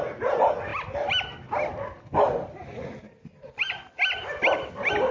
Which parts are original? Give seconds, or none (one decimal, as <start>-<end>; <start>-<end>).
0.0-5.1